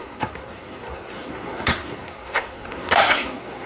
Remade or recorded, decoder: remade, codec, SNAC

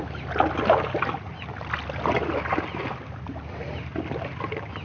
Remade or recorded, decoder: recorded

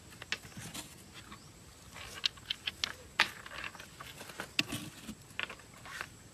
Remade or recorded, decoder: recorded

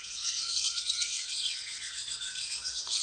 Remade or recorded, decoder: remade, codec, SNAC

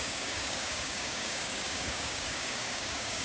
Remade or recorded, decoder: remade, codec, DAC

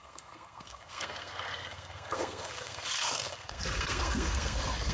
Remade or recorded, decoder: remade, codec, SNAC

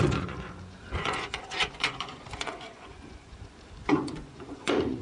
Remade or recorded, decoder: remade, vocoder, Vocos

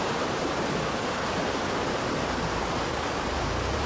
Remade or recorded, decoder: remade, vocoder, BigVGAN v2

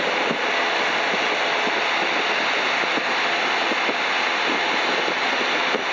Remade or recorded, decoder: recorded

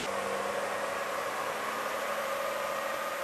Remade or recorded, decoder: recorded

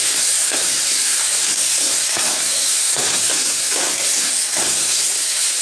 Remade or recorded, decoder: remade, codec, SNAC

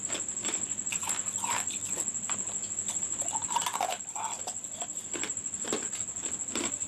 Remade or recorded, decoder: recorded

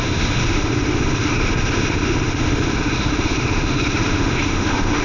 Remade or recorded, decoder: remade, autoencoder, DAC-VAE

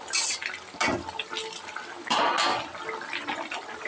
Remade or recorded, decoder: recorded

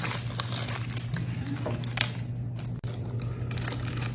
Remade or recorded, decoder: recorded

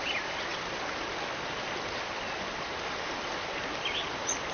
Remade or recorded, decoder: recorded